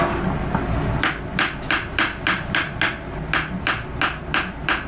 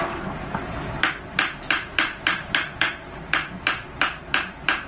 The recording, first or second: first